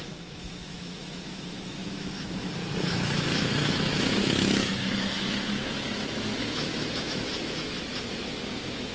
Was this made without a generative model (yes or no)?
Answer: no